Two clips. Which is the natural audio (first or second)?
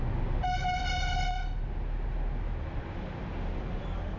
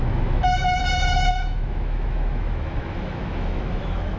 first